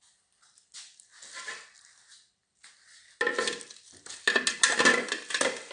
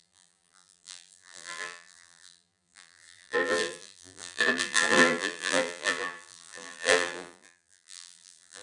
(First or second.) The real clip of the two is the first